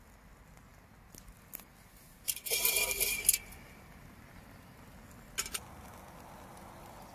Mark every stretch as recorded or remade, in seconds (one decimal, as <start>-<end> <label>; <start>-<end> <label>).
0.0-7.1 recorded